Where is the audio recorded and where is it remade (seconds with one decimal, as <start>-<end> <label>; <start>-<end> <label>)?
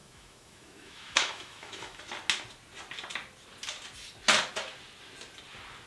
0.0-2.0 remade; 2.0-5.9 recorded